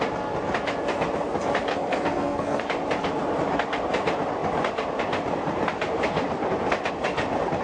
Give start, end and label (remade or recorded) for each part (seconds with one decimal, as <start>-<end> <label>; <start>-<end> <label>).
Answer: 0.0-1.7 recorded; 1.7-2.6 remade; 2.6-7.6 recorded